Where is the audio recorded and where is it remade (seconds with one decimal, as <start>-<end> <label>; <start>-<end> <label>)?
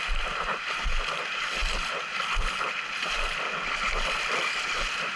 0.0-5.2 recorded